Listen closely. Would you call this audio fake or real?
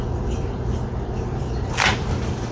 real